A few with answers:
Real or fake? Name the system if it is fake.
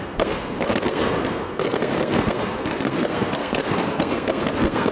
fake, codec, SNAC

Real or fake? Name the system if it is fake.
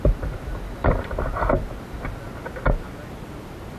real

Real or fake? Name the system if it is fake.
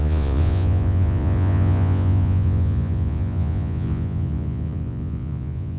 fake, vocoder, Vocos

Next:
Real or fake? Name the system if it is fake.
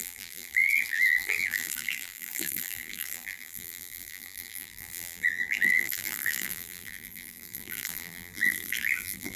fake, vocoder, BigVGAN v2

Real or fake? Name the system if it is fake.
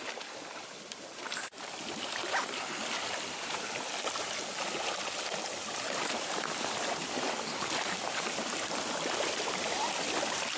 real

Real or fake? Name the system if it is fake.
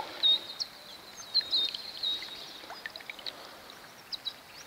real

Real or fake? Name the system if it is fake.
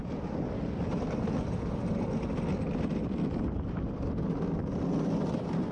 real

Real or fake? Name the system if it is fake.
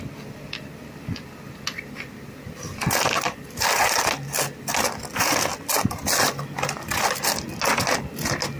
real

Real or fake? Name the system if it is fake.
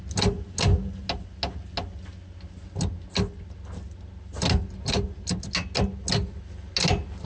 real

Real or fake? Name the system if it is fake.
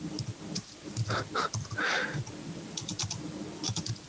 real